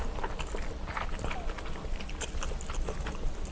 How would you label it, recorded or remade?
recorded